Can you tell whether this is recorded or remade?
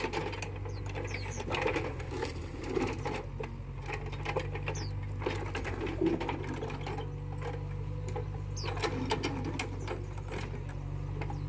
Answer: recorded